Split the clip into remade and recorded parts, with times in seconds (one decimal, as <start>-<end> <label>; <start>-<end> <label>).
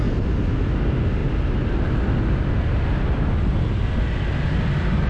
0.0-5.1 recorded